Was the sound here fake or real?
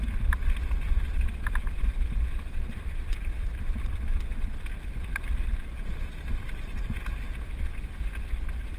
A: real